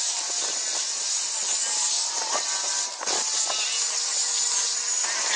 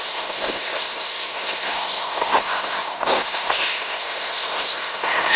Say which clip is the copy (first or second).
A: second